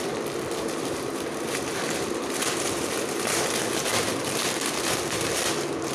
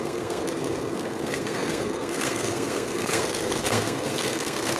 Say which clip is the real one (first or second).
first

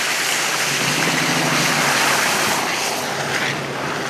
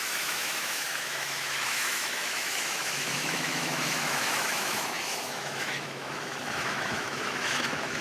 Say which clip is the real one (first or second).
first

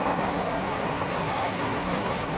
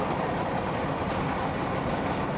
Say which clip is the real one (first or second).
second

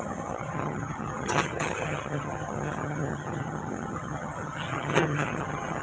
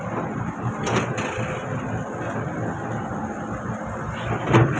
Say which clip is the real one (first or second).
second